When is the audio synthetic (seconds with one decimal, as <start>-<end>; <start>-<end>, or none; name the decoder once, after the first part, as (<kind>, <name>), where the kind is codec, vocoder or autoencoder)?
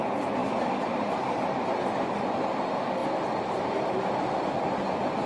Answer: none